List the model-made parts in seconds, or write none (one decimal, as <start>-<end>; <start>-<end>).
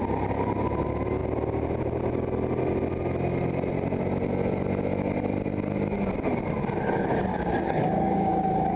7.3-8.8